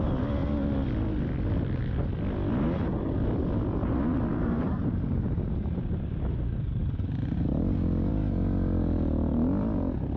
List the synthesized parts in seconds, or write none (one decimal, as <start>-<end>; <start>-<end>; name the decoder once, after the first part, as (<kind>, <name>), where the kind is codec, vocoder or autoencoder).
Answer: 4.3-5.6 (vocoder, BigVGAN v2)